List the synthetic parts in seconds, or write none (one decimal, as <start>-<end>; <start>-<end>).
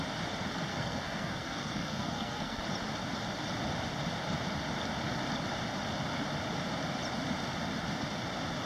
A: 0.7-2.6